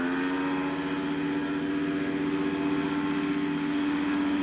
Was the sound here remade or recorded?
recorded